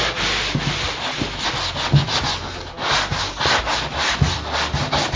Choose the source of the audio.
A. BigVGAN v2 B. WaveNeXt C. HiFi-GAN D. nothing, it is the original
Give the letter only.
D